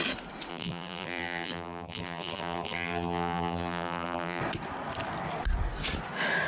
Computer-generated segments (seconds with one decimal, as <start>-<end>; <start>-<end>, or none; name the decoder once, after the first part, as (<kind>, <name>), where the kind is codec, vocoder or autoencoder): 0.5-4.4 (vocoder, BigVGAN v2)